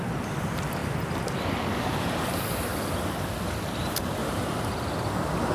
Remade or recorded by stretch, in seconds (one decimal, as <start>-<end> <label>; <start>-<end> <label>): 0.0-4.2 recorded; 4.2-4.7 remade; 4.7-5.5 recorded

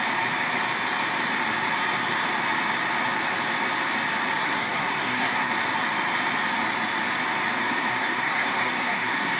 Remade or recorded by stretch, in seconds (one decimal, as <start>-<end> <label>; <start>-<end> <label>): 0.0-4.4 recorded; 4.4-5.5 remade; 5.5-7.6 recorded; 7.6-9.4 remade

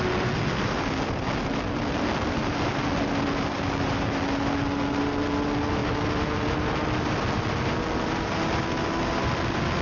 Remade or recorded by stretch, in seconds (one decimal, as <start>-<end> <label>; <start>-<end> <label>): 0.0-9.8 recorded

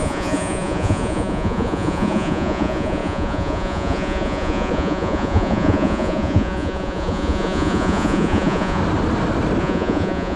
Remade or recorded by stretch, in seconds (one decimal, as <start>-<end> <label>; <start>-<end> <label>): 0.0-8.8 remade; 8.8-9.6 recorded; 9.6-10.4 remade

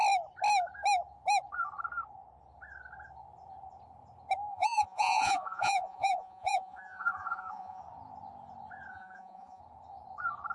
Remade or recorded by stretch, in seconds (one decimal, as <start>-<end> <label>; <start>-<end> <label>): 0.0-4.5 recorded; 4.5-7.8 remade; 7.8-8.9 recorded; 8.9-9.6 remade; 9.6-10.5 recorded

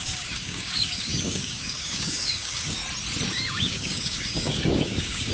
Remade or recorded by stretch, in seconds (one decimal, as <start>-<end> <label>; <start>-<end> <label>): 0.0-2.8 remade; 2.8-3.3 recorded; 3.3-5.3 remade

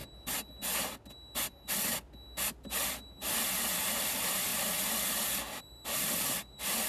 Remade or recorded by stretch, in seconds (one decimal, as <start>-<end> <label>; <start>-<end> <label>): 0.0-4.1 recorded; 4.1-4.5 remade; 4.5-5.6 recorded; 5.6-6.9 remade

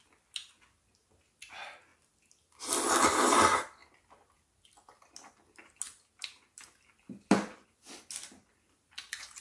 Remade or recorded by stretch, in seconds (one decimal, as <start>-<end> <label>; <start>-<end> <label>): 0.0-9.4 recorded